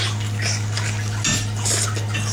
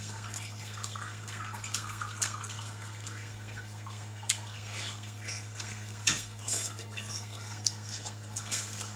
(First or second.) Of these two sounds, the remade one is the second